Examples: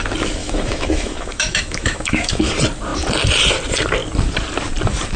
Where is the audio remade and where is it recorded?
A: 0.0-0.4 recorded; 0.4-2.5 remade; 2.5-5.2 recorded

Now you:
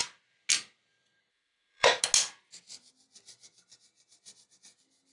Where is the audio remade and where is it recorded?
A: 0.0-1.3 recorded; 1.3-2.0 remade; 2.0-5.1 recorded

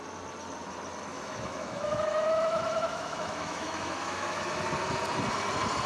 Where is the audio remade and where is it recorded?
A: 0.0-1.1 recorded; 1.1-4.6 remade; 4.6-5.9 recorded

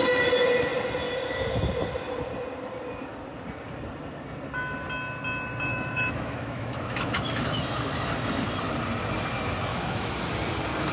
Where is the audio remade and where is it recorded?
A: 0.0-5.7 recorded; 5.7-7.6 remade; 7.6-9.7 recorded; 9.7-10.3 remade; 10.3-10.9 recorded